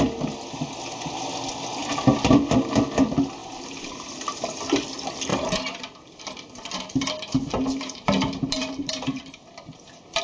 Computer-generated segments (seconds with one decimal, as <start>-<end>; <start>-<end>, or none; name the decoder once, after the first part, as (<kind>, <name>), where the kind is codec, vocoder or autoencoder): 3.4-4.6 (vocoder, BigVGAN v2); 5.3-10.2